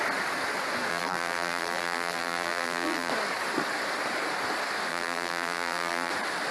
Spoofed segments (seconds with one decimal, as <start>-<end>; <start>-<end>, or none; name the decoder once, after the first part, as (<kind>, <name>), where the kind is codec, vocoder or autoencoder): 0.9-3.1 (vocoder, BigVGAN v2); 4.9-6.1